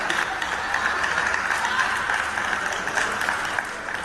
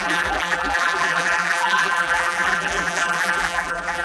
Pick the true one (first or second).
first